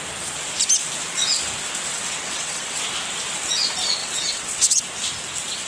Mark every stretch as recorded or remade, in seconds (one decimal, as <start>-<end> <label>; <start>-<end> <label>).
0.0-1.9 recorded; 1.9-2.8 remade; 2.8-4.0 recorded; 4.0-4.8 remade; 4.8-5.7 recorded